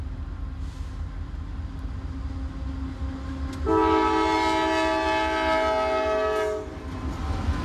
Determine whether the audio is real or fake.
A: real